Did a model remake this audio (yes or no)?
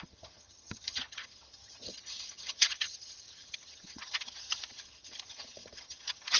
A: yes